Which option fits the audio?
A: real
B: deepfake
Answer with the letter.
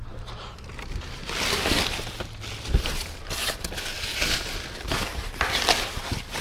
A